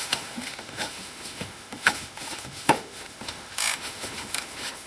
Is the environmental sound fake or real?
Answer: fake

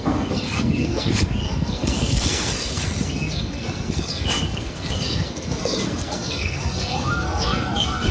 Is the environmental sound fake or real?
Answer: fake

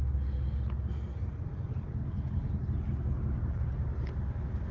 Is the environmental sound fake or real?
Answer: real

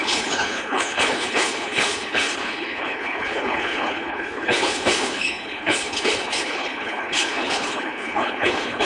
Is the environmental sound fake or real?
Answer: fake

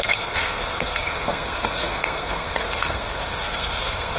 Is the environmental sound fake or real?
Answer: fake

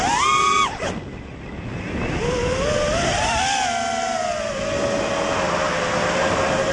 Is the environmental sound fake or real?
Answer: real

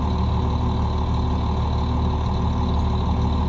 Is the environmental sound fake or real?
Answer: real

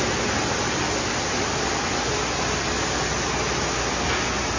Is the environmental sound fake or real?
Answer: real